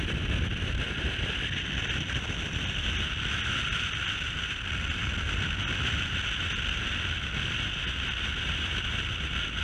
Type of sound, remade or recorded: recorded